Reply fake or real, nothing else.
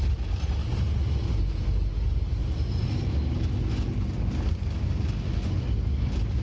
real